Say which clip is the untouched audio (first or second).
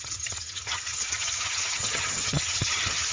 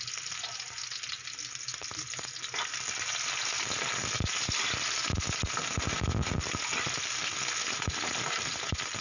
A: second